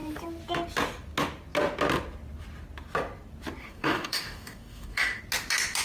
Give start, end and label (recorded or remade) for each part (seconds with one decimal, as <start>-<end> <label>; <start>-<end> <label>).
0.0-3.6 recorded; 3.6-5.2 remade; 5.2-5.8 recorded